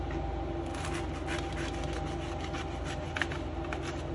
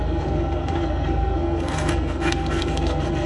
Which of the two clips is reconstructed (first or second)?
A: second